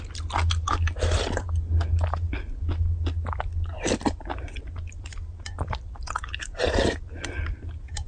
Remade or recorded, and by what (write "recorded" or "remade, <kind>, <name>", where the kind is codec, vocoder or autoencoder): recorded